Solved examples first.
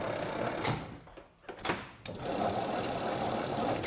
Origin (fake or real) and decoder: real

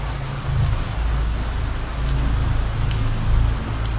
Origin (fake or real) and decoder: real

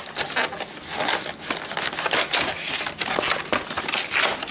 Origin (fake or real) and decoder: real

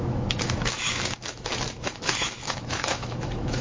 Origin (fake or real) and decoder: fake, autoencoder, DAC-VAE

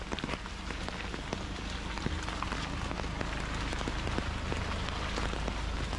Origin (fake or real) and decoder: real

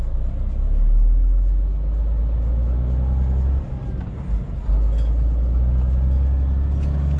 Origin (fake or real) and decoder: real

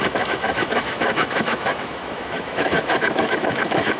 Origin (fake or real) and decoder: fake, autoencoder, DAC-VAE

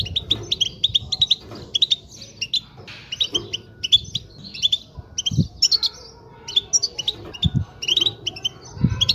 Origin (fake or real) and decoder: real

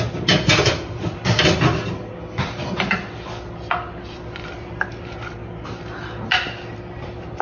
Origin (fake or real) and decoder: real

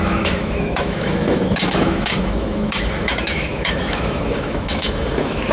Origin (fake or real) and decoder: fake, autoencoder, DAC-VAE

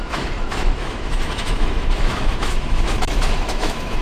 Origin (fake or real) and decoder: fake, autoencoder, DAC-VAE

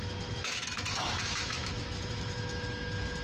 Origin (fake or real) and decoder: fake, autoencoder, DAC-VAE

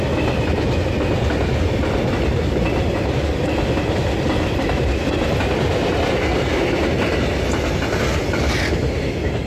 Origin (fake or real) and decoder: real